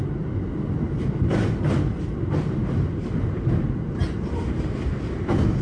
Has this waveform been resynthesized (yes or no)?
no